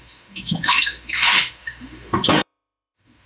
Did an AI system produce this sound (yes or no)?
yes